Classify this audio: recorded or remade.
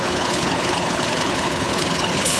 remade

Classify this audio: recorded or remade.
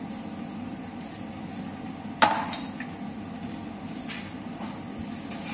recorded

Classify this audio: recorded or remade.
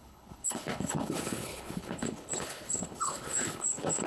remade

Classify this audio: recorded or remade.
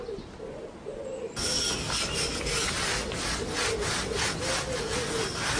recorded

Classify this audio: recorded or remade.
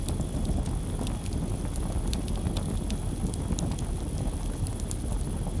recorded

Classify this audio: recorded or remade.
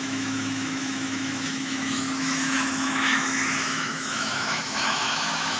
remade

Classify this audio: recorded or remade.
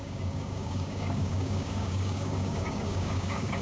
remade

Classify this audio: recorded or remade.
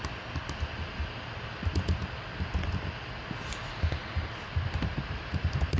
recorded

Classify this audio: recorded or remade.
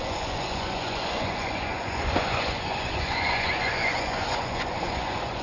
remade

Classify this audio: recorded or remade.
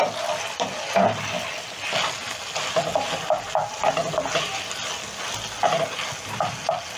recorded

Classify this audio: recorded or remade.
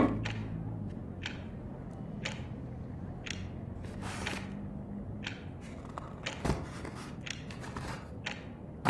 recorded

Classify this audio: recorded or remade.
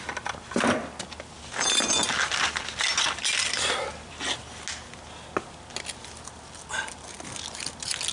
recorded